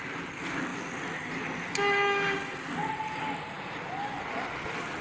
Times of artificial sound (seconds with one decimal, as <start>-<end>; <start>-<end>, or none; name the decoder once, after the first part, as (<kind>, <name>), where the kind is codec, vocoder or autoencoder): none